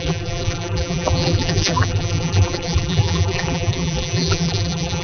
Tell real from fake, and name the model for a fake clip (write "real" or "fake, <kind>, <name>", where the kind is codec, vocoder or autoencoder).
fake, vocoder, BigVGAN v2